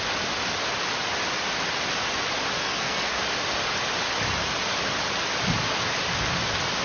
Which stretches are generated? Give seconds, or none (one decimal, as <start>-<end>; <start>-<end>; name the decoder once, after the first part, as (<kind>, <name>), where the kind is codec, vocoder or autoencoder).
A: 2.6-3.1 (codec, SNAC)

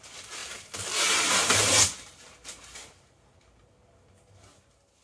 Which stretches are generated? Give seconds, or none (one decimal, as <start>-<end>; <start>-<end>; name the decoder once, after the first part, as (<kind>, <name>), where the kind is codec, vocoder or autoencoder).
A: none

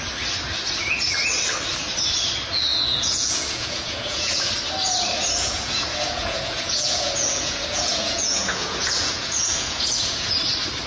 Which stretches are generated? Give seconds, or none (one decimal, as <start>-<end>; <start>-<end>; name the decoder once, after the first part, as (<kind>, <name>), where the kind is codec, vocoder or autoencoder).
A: 2.7-4.5 (vocoder, Vocos); 5.4-10.3

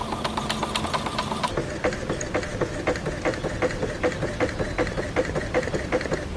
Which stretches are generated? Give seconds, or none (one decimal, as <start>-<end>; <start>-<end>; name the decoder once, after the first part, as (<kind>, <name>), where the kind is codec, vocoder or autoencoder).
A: none

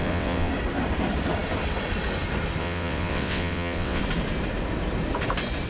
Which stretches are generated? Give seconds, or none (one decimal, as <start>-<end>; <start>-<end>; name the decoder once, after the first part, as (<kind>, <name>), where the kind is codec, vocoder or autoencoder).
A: 0.0-0.5 (vocoder, WaveNeXt); 2.6-4.0